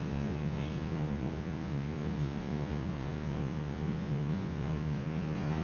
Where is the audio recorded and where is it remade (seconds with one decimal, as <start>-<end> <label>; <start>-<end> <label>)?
0.0-5.6 remade